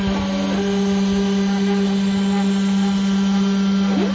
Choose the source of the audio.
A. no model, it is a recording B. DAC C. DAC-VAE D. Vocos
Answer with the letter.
A